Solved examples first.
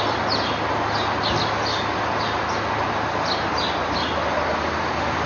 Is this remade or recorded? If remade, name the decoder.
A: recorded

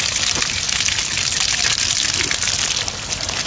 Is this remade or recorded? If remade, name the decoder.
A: recorded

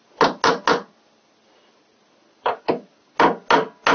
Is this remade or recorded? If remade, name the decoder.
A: recorded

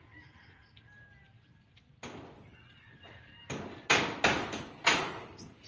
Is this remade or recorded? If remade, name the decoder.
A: recorded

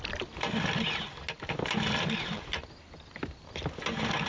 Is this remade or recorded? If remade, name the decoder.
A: recorded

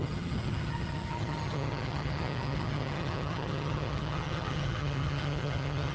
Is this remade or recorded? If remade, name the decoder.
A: remade, vocoder, HiFi-GAN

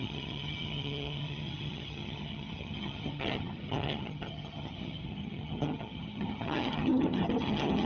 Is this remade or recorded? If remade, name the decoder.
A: remade, vocoder, HiFi-GAN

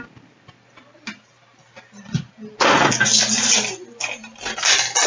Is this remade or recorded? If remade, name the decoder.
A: recorded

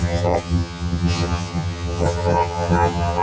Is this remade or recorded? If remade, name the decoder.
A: remade, vocoder, HiFi-GAN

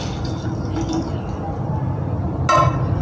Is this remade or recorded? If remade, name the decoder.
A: recorded